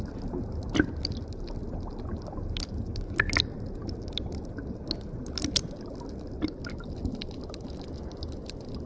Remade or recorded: recorded